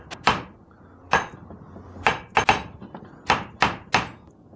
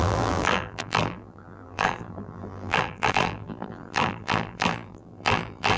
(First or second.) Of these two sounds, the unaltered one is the first